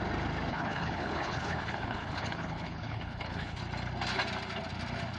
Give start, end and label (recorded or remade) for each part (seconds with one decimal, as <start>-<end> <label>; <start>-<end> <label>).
0.0-0.5 recorded; 0.5-3.6 remade; 3.6-5.2 recorded